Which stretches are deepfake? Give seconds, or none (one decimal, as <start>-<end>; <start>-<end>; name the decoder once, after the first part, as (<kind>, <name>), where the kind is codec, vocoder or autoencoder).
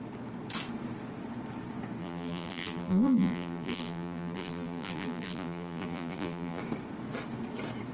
2.0-6.6 (vocoder, BigVGAN v2)